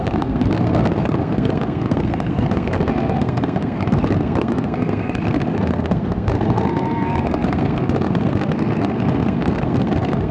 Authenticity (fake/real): fake